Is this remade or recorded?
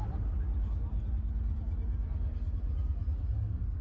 recorded